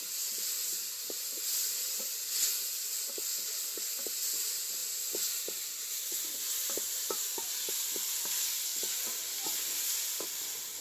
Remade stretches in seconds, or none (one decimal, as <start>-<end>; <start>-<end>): 0.6-3.1; 4.8-7.7